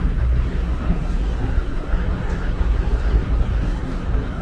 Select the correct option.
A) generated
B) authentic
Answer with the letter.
A